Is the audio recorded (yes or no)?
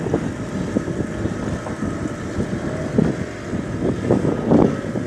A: yes